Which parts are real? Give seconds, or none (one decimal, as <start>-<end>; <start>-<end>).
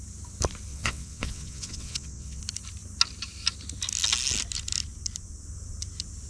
0.0-0.7; 2.4-6.3